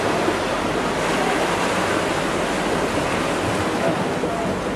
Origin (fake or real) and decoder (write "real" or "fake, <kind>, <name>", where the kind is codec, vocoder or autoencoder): real